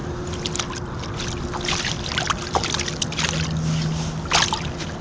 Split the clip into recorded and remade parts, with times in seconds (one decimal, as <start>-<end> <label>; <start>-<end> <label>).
0.0-5.0 recorded